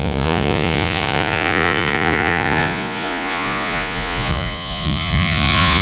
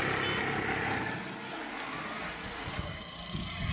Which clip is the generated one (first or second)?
first